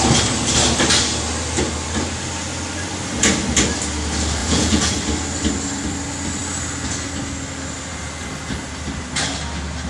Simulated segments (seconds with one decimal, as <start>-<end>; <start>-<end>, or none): 4.4-4.9